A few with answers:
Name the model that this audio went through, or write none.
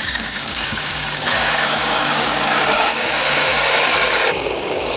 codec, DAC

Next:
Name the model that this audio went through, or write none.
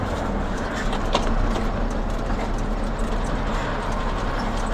none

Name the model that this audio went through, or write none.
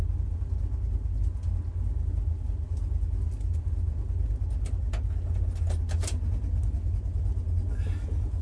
none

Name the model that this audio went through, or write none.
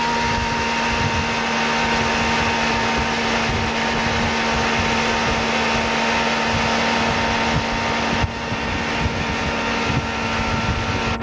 none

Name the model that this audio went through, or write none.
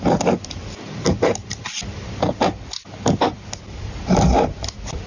none